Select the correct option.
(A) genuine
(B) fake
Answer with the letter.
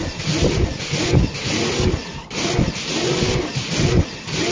A